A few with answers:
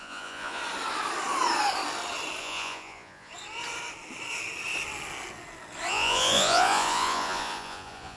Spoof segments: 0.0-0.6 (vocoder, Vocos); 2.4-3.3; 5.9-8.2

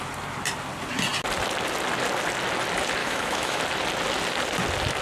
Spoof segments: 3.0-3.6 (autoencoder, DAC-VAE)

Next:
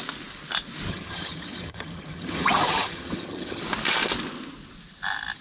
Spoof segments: 0.9-3.6 (vocoder, HiFi-GAN)

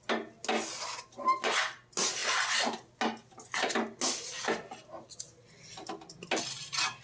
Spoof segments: none

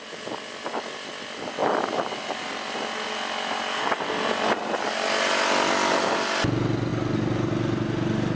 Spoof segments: none